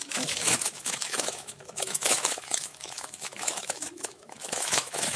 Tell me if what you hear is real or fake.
fake